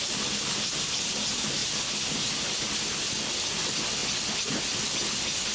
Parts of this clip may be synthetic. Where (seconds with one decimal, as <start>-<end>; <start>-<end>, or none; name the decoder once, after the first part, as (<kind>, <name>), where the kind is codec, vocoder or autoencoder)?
none